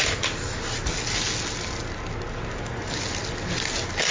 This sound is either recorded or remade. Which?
recorded